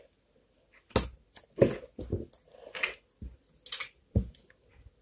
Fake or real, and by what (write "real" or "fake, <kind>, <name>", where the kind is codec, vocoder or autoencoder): real